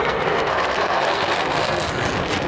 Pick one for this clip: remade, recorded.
remade